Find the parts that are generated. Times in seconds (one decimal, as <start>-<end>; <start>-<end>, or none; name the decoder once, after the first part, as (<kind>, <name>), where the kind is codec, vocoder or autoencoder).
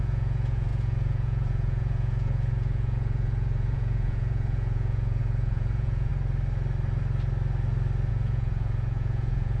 0.0-6.1 (vocoder, Vocos); 8.1-9.6